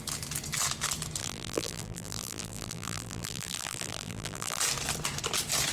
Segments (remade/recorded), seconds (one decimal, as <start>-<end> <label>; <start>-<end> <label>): 0.0-1.2 recorded; 1.2-4.6 remade; 4.6-5.7 recorded